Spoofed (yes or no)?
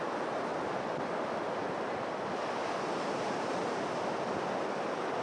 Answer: no